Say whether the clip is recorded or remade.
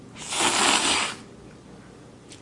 recorded